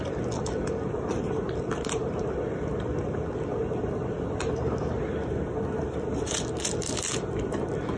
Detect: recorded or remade remade